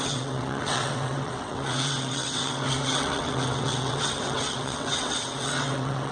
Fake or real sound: fake